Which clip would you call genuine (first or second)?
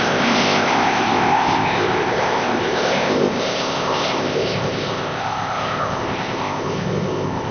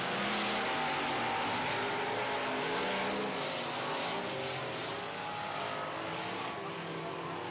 second